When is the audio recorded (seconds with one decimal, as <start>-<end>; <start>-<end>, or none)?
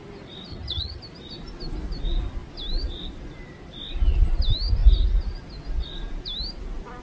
0.0-0.5; 1.0-7.0